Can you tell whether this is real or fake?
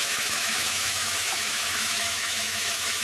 fake